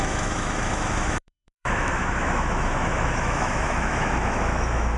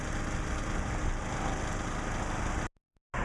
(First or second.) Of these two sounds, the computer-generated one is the first